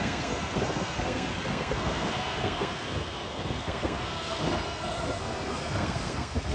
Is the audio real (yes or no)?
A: no